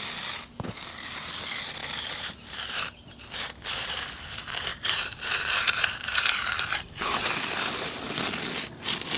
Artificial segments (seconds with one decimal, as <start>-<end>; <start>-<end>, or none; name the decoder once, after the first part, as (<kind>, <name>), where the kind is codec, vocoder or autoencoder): 1.8-3.3 (vocoder, BigVGAN v2); 4.7-7.2